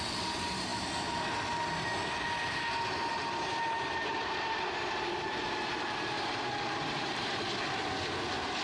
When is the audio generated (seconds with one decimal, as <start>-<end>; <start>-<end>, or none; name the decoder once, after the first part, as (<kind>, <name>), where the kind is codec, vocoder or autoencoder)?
3.1-7.4 (vocoder, BigVGAN v2)

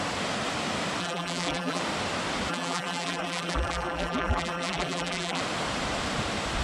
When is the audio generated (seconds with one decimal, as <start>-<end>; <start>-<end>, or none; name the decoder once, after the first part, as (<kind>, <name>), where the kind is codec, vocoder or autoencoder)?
1.0-1.8 (vocoder, BigVGAN v2); 2.5-5.4

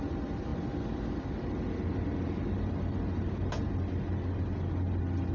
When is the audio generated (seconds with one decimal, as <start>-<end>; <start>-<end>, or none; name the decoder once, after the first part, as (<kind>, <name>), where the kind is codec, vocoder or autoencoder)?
none

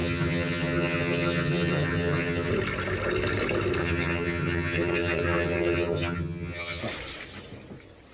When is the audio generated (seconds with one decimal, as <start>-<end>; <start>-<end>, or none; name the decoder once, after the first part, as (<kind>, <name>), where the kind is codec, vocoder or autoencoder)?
0.0-2.5 (vocoder, HiFi-GAN); 3.8-6.8

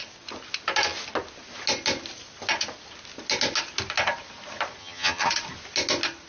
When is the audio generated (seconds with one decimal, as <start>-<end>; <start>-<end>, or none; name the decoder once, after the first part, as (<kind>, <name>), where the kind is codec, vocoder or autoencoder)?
4.8-5.3 (vocoder, HiFi-GAN)

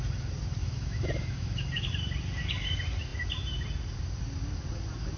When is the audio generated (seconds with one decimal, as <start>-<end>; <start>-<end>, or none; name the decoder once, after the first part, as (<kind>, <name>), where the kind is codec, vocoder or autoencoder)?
0.6-1.9 (autoencoder, DAC-VAE)